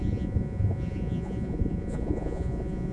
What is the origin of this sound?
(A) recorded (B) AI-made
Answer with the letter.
B